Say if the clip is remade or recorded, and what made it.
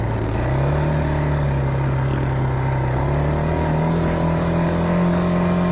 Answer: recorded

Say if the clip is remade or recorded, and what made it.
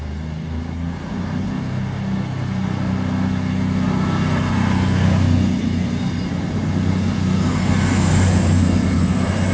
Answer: recorded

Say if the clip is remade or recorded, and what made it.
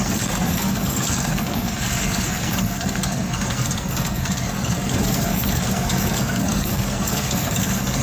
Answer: remade, codec, SNAC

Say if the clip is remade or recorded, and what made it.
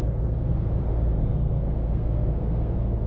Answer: remade, codec, SNAC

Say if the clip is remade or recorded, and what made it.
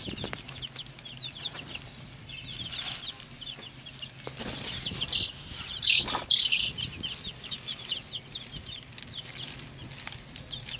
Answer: recorded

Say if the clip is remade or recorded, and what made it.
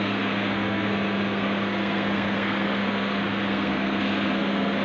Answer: remade, codec, SNAC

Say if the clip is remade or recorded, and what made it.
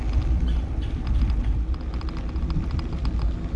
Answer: recorded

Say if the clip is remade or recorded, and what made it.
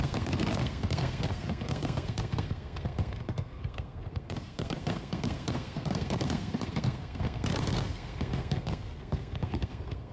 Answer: remade, codec, SNAC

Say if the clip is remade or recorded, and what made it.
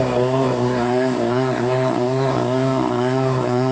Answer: remade, codec, SNAC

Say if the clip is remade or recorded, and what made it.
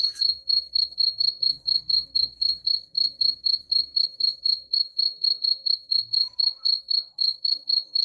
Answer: remade, codec, SNAC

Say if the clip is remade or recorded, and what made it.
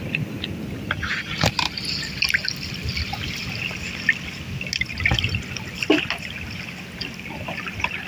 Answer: recorded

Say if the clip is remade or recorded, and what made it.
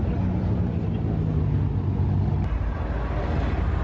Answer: recorded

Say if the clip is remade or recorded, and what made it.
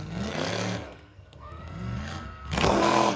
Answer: remade, codec, SNAC